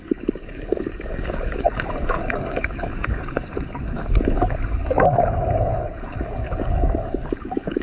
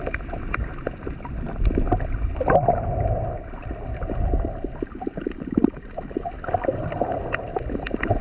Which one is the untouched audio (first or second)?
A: second